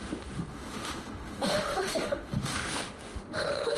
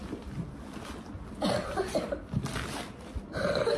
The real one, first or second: second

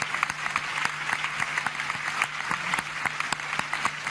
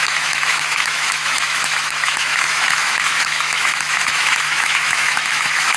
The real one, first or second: first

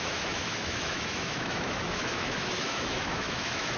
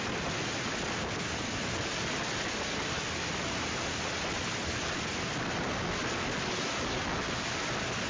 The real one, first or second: second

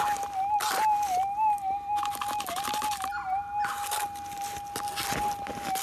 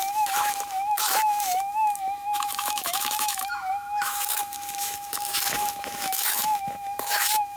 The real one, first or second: first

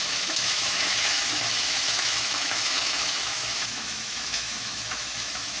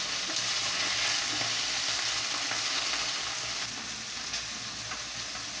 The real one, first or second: second